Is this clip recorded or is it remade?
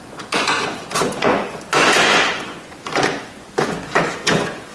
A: remade